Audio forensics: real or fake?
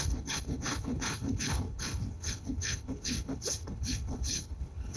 fake